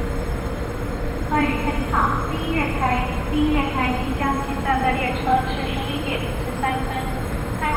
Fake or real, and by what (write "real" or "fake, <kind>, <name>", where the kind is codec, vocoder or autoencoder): fake, vocoder, BigVGAN v2